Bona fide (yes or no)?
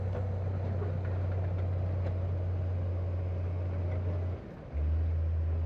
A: yes